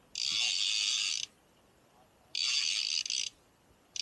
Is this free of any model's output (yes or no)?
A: yes